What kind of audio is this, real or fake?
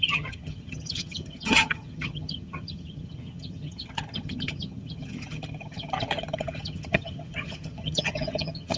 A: fake